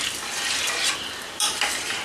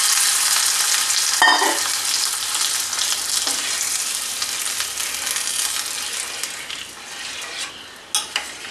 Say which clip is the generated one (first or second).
first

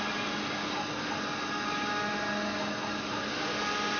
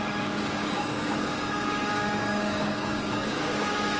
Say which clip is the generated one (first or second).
second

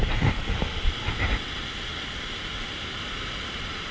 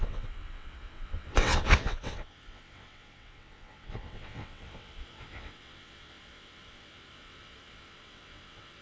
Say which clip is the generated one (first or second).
second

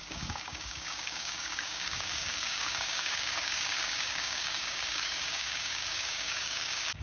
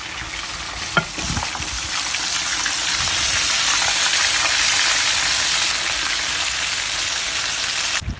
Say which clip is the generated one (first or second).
first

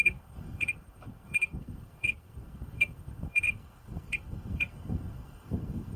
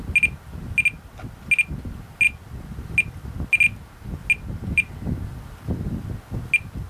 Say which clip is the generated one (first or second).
first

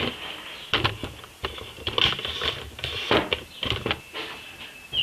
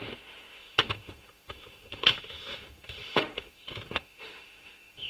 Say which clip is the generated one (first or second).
second